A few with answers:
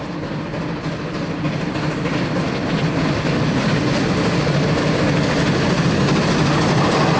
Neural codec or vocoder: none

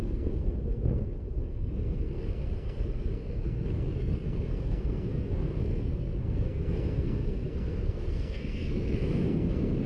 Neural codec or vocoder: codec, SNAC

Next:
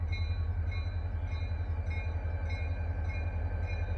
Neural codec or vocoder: none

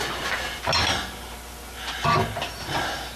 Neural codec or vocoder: none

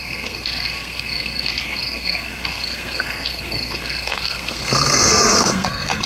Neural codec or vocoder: codec, SNAC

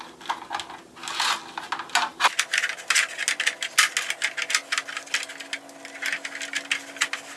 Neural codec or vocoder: none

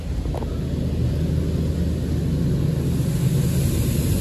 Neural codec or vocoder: none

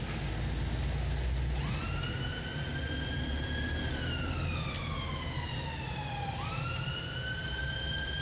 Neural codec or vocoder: none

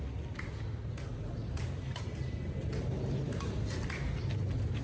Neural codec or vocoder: none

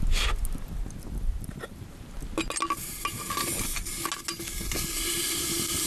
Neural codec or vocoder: none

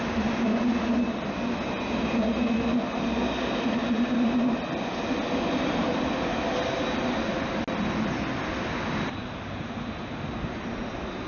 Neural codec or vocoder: none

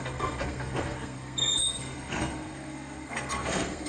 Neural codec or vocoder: codec, SNAC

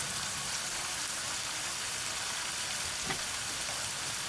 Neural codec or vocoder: none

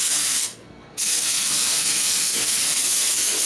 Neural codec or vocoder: codec, SNAC